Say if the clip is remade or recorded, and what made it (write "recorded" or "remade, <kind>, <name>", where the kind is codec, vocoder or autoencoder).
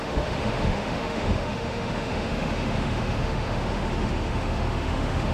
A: remade, autoencoder, DAC-VAE